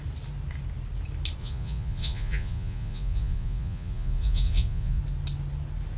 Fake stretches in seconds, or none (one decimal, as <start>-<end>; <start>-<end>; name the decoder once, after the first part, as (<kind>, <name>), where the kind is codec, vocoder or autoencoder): 1.4-5.0 (vocoder, Vocos)